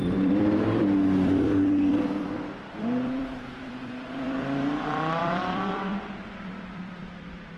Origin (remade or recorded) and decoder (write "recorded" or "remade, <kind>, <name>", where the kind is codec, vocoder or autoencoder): remade, vocoder, BigVGAN v2